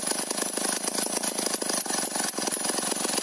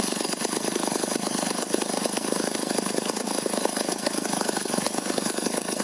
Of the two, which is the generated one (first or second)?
second